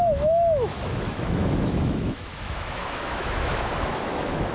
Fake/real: fake